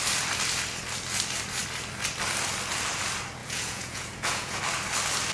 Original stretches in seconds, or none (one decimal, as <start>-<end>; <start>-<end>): 0.0-3.4; 4.6-5.3